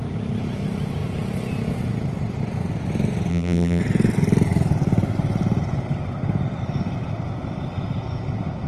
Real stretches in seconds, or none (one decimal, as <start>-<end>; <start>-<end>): 0.0-3.3; 3.8-8.7